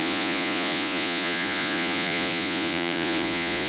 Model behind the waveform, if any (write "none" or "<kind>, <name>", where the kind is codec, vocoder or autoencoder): vocoder, Vocos